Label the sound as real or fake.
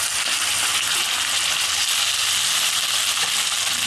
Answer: real